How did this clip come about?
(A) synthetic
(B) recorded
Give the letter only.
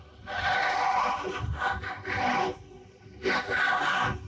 B